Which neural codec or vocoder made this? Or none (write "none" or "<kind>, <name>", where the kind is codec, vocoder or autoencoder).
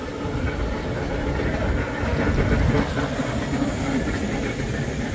none